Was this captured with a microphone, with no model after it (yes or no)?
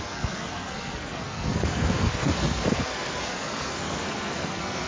no